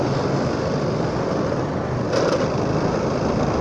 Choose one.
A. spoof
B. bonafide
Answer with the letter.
B